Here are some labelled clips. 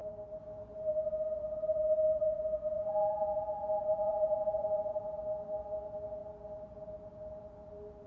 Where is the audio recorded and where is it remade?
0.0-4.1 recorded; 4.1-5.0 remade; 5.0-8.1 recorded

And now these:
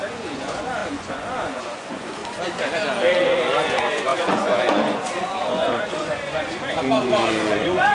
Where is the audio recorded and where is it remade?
0.0-2.2 remade; 2.2-3.1 recorded; 3.1-7.9 remade

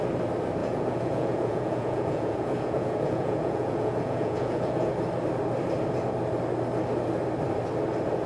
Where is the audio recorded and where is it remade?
0.0-0.6 recorded; 0.6-4.9 remade; 4.9-8.3 recorded